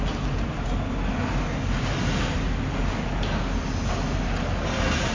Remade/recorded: recorded